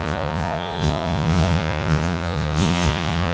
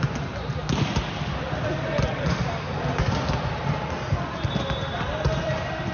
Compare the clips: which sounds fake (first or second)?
first